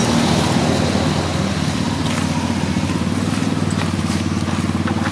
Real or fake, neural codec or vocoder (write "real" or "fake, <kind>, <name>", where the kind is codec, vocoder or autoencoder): real